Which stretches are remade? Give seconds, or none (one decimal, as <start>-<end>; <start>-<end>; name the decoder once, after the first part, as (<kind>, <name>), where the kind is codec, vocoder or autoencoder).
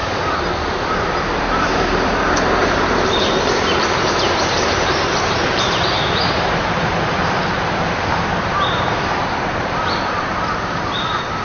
1.0-11.4 (vocoder, BigVGAN v2)